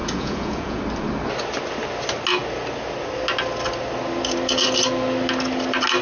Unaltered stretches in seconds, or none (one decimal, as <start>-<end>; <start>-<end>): 0.8-6.0